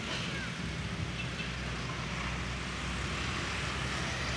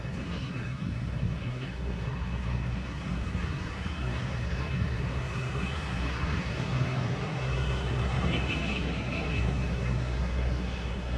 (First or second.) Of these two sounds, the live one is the first